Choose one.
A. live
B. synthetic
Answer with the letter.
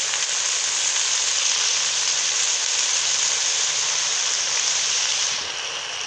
A